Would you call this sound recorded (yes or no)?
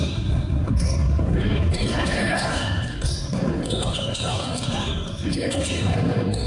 no